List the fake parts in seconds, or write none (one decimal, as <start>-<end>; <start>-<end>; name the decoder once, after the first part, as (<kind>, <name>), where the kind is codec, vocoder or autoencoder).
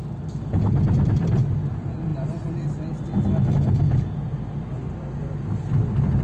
0.0-2.1 (vocoder, BigVGAN v2); 3.5-6.2